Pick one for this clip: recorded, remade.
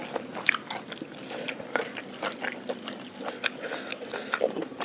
recorded